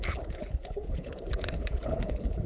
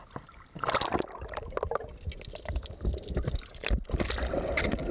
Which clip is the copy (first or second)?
first